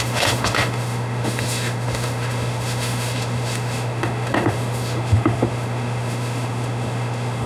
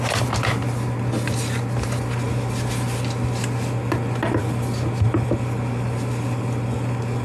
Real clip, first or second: second